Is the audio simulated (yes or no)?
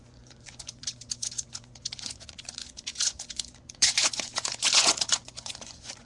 yes